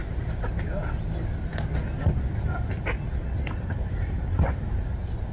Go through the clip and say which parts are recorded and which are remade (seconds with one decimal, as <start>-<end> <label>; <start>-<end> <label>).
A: 0.0-5.3 recorded